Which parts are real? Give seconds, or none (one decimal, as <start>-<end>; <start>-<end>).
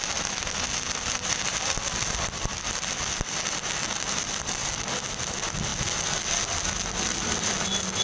0.0-8.0